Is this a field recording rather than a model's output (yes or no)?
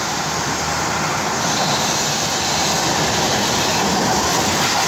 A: yes